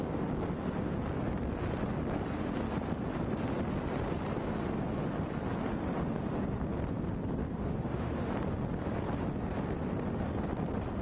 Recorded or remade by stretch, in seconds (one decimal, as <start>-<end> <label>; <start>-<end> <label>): 0.0-7.5 recorded; 7.5-8.3 remade; 8.3-11.0 recorded